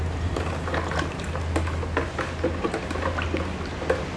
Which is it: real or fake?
real